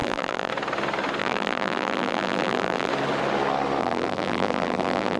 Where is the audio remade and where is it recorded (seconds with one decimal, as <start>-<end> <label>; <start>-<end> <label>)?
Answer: 0.0-0.5 remade; 0.5-1.2 recorded; 1.2-2.9 remade; 2.9-3.8 recorded; 3.8-5.2 remade